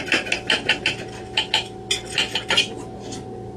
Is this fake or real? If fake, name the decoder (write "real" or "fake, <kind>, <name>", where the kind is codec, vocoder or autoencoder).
real